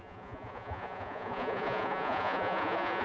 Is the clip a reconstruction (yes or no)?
yes